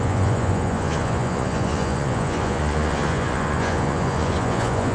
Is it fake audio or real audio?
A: fake